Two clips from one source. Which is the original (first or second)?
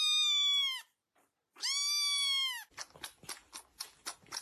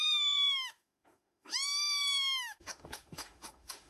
first